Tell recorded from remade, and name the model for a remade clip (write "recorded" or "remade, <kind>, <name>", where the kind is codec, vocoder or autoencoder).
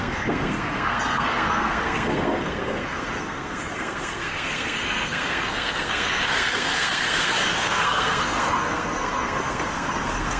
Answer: remade, codec, SNAC